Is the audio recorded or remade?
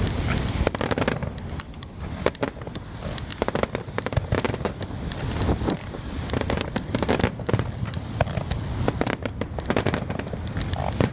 recorded